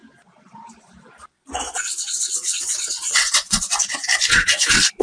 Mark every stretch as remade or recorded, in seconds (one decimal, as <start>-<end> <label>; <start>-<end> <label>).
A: 0.0-1.7 recorded; 1.7-3.7 remade; 3.7-4.3 recorded; 4.3-5.0 remade